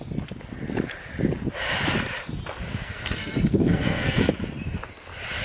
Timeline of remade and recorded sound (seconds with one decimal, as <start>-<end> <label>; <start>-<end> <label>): 0.0-2.7 recorded; 2.7-4.3 remade; 4.3-5.4 recorded